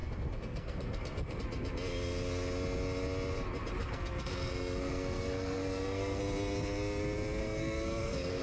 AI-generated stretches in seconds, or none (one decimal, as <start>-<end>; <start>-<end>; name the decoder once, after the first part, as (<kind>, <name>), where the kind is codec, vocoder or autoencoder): 0.0-1.4 (codec, SNAC); 3.8-6.2; 7.4-8.4